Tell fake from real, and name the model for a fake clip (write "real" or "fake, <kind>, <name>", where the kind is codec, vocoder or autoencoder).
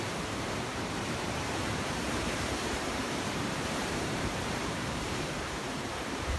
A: fake, vocoder, BigVGAN v2